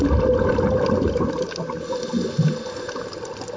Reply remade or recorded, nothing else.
recorded